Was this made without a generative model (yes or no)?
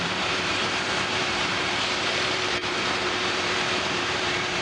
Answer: no